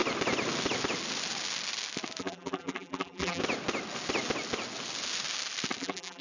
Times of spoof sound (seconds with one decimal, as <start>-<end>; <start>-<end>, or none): 2.2-3.4; 5.8-6.2